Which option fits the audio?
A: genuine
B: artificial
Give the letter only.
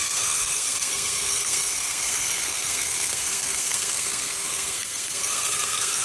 B